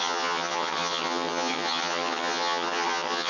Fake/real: fake